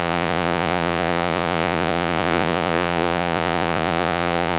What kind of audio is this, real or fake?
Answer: fake